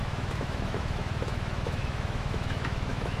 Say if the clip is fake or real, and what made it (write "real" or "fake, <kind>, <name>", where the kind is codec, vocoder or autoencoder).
fake, autoencoder, DAC-VAE